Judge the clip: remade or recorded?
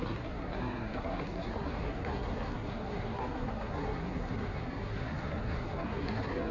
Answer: remade